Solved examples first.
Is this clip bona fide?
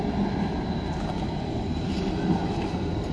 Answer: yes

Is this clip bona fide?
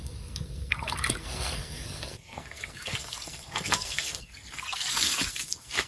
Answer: no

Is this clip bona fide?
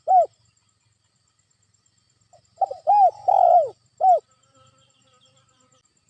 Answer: yes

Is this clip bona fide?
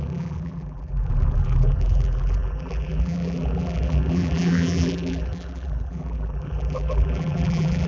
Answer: no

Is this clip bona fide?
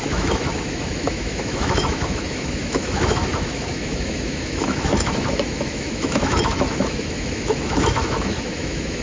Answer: no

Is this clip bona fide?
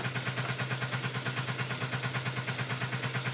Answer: yes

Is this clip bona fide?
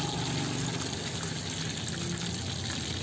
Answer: yes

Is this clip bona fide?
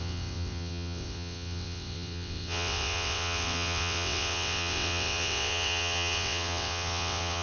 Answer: no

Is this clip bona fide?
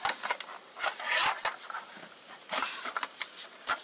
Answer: no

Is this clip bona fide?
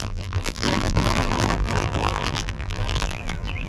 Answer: no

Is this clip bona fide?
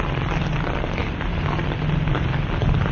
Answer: yes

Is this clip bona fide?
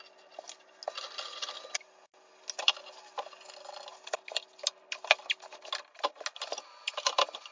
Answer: yes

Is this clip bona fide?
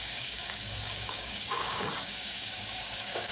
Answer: no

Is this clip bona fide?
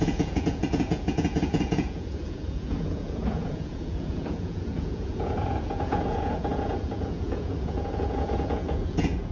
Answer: no